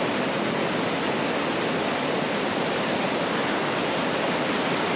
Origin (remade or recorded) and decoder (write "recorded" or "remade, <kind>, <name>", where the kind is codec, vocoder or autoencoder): recorded